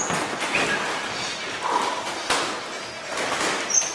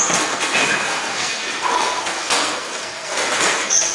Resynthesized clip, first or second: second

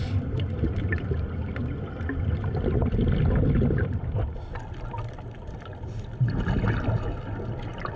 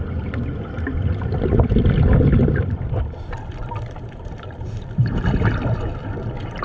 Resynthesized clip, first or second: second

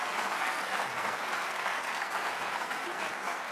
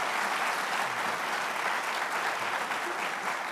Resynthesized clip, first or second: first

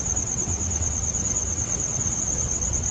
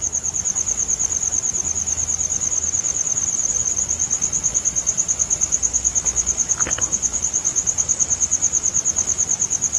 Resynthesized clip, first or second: first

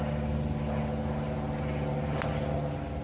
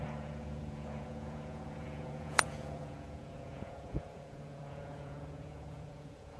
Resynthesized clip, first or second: second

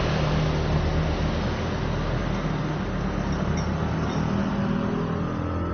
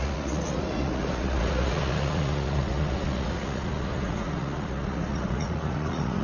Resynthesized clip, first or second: second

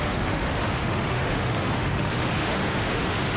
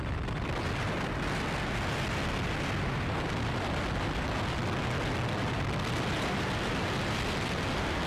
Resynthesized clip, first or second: first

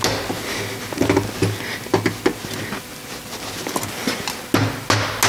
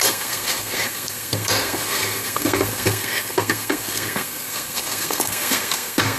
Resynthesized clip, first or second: second